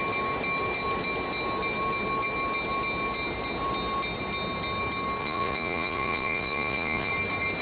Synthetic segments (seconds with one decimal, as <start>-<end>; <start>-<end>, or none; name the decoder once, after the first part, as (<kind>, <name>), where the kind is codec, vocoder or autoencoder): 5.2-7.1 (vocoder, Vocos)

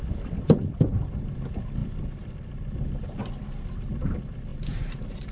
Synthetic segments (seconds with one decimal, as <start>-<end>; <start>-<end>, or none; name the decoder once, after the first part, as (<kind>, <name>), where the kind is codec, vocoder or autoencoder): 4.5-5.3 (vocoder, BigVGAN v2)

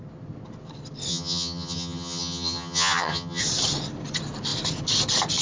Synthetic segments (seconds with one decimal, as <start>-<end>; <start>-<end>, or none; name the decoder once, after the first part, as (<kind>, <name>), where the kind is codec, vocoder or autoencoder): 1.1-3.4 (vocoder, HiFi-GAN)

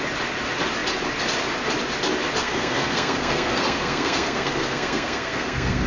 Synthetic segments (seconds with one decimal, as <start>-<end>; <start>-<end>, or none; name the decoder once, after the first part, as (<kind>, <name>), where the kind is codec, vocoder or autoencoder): 2.4-5.9 (codec, SNAC)